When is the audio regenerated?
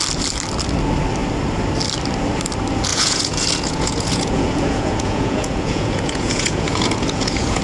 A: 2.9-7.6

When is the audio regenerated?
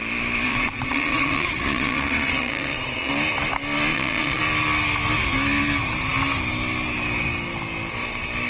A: 0.5-3.1; 3.9-4.4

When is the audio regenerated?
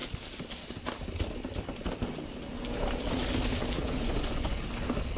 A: 3.8-4.6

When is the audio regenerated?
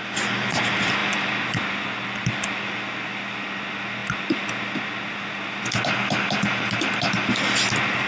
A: none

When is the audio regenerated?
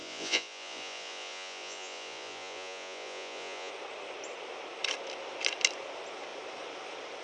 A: 0.0-3.7